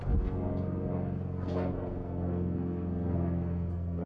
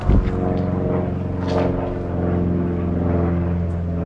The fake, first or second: first